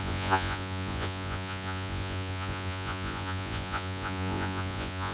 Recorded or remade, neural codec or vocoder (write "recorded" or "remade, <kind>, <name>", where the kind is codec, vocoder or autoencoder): remade, vocoder, Vocos